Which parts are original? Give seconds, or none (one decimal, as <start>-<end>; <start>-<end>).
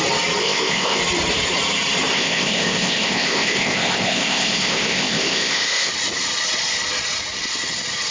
0.0-0.4; 1.0-2.1; 5.9-8.1